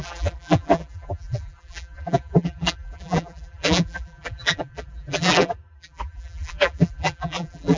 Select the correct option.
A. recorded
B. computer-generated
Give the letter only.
B